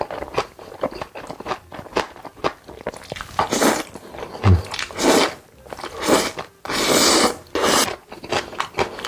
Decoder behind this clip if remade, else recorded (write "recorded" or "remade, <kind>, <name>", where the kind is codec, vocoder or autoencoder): recorded